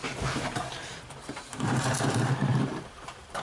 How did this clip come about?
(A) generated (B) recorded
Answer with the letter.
A